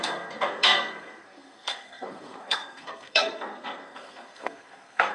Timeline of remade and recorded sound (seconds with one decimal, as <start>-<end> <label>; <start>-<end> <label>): 0.0-5.1 remade